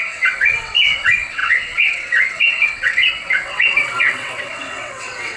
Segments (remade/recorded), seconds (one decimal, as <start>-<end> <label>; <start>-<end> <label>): 0.0-5.4 remade